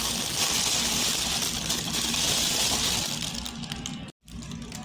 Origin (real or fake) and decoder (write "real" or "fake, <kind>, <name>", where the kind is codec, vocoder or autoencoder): real